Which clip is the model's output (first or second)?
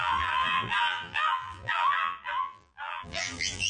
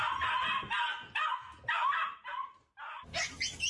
first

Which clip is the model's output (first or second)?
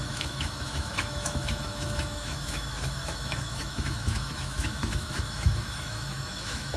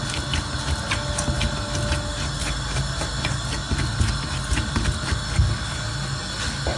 first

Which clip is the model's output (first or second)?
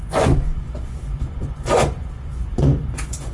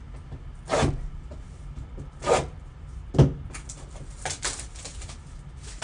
first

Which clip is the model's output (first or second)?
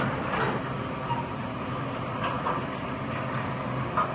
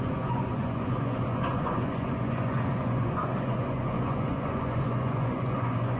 second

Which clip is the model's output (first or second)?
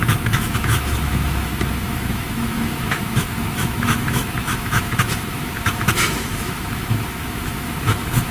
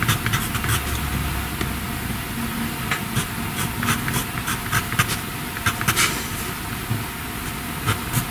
first